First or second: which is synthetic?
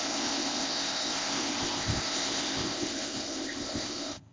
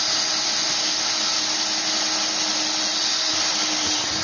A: first